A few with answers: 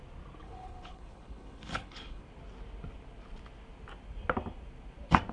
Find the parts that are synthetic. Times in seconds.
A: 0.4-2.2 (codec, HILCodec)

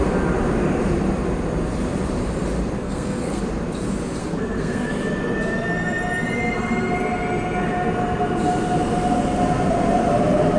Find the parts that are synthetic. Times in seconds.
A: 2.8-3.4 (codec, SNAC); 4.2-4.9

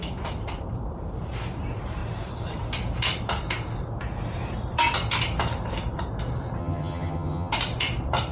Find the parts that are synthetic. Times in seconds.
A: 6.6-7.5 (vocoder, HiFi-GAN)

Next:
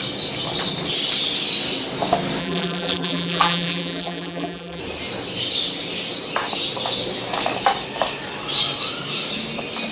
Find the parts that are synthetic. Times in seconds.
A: 2.4-4.8 (vocoder, BigVGAN v2)